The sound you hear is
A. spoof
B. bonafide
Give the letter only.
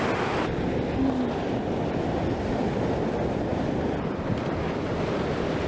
B